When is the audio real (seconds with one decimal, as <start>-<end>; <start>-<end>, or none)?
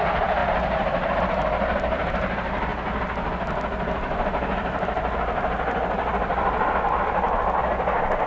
0.4-1.2; 2.7-6.6; 7.6-8.3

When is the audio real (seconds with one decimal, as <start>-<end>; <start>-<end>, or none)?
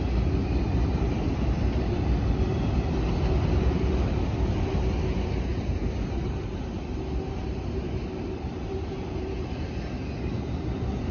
0.0-0.4; 1.1-5.5; 6.2-11.1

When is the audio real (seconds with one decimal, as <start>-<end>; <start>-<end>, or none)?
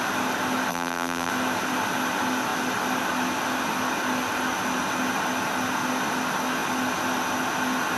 0.0-0.7; 1.3-8.0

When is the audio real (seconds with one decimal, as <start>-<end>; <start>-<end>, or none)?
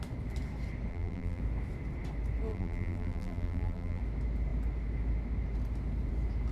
0.0-0.9; 1.4-2.5; 4.0-6.5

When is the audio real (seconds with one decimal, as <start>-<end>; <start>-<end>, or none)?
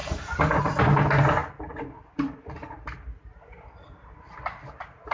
0.8-5.1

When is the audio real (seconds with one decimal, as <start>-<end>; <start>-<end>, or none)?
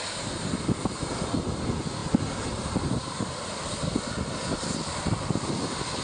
0.0-6.0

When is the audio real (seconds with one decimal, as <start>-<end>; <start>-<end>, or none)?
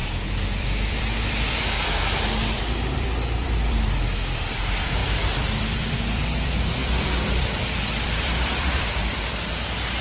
none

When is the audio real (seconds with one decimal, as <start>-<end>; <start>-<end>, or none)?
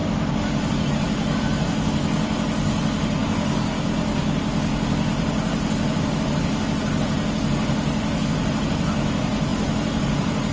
0.9-9.5